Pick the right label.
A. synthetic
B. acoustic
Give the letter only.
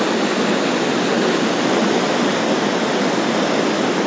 A